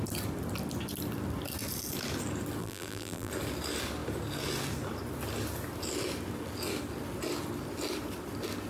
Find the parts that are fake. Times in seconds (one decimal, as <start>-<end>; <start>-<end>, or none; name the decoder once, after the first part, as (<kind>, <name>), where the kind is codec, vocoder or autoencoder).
2.6-3.3 (vocoder, BigVGAN v2)

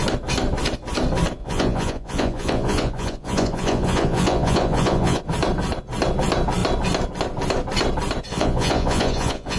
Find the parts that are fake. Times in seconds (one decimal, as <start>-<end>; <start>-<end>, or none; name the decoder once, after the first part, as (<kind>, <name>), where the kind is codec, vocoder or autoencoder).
1.4-5.2 (vocoder, Vocos); 8.3-9.6